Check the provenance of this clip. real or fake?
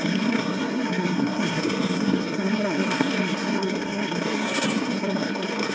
fake